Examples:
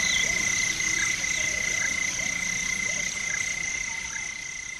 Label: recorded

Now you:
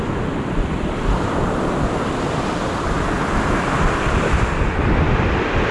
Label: recorded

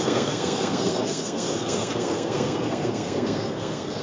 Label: remade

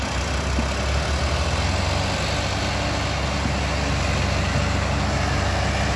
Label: recorded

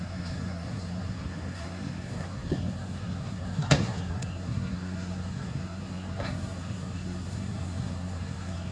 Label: remade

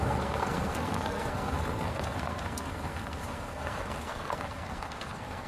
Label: remade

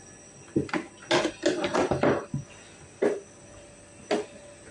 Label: recorded